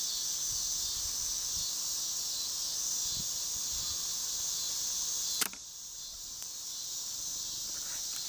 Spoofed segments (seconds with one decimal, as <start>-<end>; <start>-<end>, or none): none